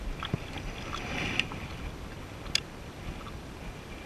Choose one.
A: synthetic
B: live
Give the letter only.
B